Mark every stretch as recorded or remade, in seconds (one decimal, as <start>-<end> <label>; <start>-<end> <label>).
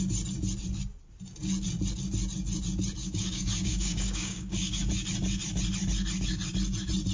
0.0-3.0 recorded; 3.0-4.8 remade; 4.8-7.1 recorded